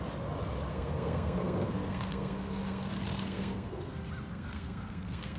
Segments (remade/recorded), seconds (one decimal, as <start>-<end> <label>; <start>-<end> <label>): 0.0-0.7 recorded; 0.7-3.9 remade; 3.9-4.3 recorded; 4.3-5.4 remade